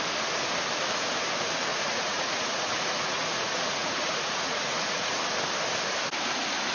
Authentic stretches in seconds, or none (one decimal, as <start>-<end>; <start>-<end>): 0.0-1.7; 5.2-6.7